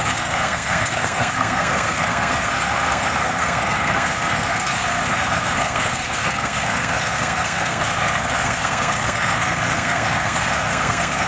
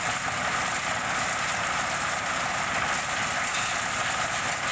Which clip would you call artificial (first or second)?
first